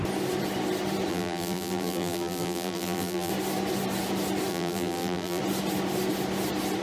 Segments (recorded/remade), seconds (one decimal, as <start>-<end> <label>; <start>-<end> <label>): 0.0-1.1 recorded; 1.1-3.3 remade; 3.3-4.5 recorded; 4.5-5.4 remade; 5.4-6.8 recorded